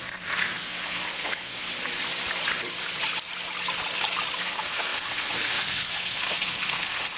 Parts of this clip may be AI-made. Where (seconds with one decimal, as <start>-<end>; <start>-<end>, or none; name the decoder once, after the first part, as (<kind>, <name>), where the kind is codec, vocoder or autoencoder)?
0.0-1.7 (codec, SNAC); 4.4-7.2